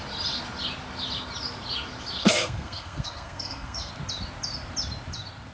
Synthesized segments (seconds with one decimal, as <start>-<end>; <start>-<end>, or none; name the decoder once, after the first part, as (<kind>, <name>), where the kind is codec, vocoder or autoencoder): 2.2-3.9 (codec, SNAC)